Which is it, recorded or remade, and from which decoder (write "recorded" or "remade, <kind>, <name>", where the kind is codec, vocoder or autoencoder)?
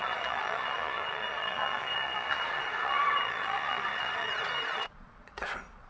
remade, vocoder, Vocos